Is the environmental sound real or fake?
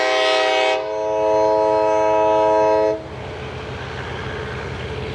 real